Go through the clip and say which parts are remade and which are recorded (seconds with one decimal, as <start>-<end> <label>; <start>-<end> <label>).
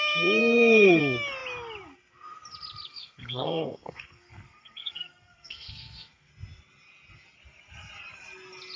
0.0-0.4 recorded; 0.4-1.0 remade; 1.0-2.9 recorded; 2.9-6.3 remade; 6.3-8.8 recorded